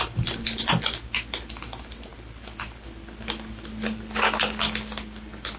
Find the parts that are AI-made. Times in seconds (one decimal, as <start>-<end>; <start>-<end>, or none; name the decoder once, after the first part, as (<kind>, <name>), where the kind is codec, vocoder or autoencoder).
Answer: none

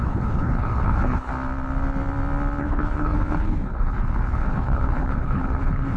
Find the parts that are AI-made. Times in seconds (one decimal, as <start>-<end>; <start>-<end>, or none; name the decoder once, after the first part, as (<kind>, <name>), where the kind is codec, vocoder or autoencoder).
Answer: 0.0-1.3 (codec, HILCodec); 2.6-6.0

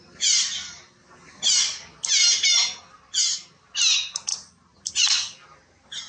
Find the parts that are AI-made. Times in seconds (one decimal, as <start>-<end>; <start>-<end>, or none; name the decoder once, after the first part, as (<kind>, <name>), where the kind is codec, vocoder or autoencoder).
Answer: none